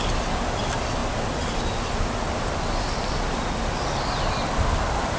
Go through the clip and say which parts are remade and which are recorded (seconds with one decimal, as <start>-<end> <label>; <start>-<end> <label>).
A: 0.0-5.2 recorded